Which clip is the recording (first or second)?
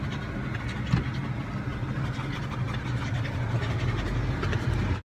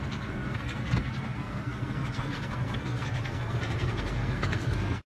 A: first